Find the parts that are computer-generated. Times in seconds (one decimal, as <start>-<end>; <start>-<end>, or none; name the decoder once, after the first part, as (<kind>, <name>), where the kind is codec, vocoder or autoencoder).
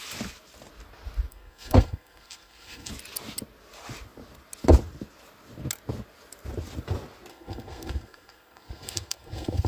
1.3-2.9 (codec, SNAC); 7.3-9.7